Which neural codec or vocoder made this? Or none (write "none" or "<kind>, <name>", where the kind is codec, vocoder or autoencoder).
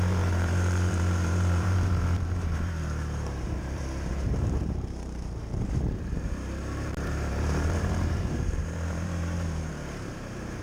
vocoder, BigVGAN v2